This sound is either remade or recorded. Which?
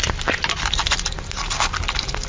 recorded